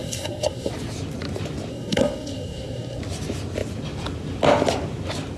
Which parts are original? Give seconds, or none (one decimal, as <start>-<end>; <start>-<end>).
0.7-1.7; 3.0-5.4